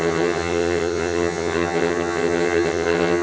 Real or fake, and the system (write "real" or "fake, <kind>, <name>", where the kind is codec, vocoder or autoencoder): fake, vocoder, HiFi-GAN